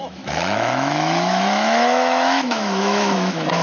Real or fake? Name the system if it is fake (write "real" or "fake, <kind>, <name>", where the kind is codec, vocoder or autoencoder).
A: fake, autoencoder, DAC-VAE